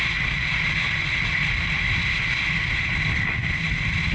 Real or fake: real